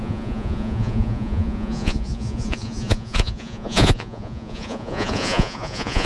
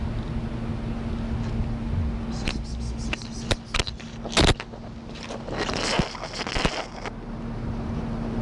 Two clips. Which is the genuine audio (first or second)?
second